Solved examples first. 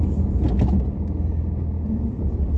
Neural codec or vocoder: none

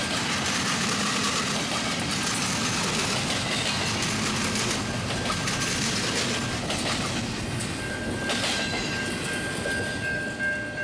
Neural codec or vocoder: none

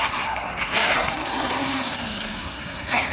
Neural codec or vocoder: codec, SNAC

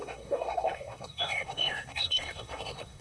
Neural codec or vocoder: codec, SNAC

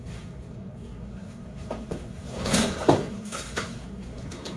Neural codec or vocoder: codec, SNAC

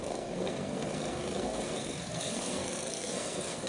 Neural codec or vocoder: codec, SNAC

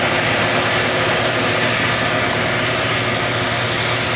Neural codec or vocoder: none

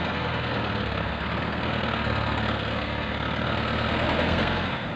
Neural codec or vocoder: codec, SNAC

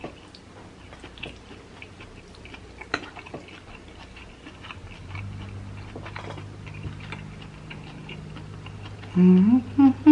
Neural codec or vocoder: none